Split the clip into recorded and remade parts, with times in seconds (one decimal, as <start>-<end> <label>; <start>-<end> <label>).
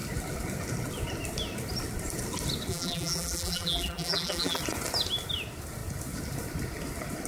0.0-2.7 recorded; 2.7-4.6 remade; 4.6-7.3 recorded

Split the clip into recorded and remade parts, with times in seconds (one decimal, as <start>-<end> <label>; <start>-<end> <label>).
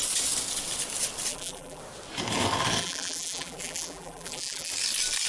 0.0-1.3 recorded; 1.3-1.8 remade; 1.8-2.8 recorded; 2.8-4.7 remade; 4.7-5.3 recorded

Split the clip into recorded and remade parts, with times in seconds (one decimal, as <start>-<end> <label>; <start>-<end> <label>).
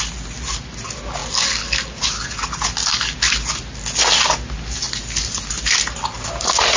0.0-6.8 recorded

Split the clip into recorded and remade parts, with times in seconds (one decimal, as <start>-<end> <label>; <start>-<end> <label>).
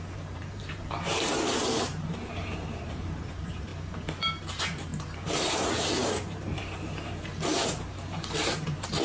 0.0-3.7 remade; 3.7-4.5 recorded; 4.5-9.0 remade